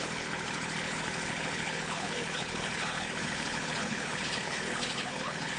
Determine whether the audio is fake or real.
fake